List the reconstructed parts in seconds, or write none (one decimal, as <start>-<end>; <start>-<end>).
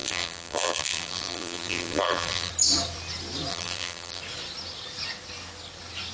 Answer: 0.0-2.5; 3.5-4.2